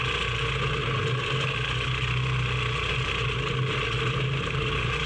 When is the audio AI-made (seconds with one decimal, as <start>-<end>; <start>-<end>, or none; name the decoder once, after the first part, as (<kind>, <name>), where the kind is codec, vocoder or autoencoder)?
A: none